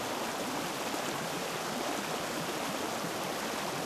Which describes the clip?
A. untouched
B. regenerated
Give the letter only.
A